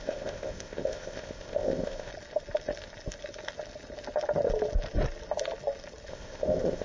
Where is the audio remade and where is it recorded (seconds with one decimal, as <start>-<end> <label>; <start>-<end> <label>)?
0.0-2.1 remade; 2.1-6.1 recorded; 6.1-6.8 remade

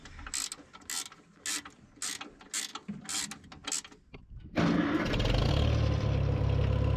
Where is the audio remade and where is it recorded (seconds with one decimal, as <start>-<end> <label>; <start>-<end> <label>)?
0.0-7.0 recorded

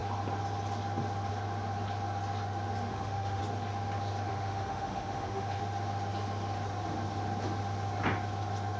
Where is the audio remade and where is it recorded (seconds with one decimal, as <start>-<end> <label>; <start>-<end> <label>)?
0.0-2.9 recorded; 2.9-3.4 remade; 3.4-4.3 recorded; 4.3-5.6 remade; 5.6-8.8 recorded